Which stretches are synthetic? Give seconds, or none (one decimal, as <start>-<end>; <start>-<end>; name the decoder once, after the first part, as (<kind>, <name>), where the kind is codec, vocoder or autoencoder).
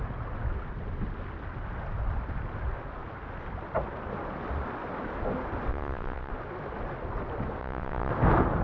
5.7-6.3 (vocoder, WaveNeXt); 7.6-8.1